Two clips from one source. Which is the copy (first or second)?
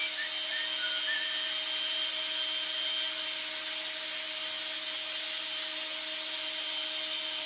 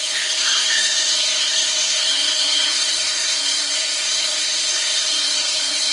second